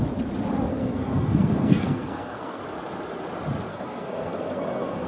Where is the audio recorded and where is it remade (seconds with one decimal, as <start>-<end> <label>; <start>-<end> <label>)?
0.0-0.7 recorded; 0.7-2.6 remade; 2.6-3.7 recorded; 3.7-5.1 remade